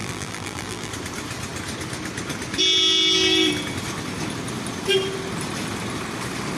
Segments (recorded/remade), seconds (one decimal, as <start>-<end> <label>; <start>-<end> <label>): 0.0-0.9 remade; 0.9-6.6 recorded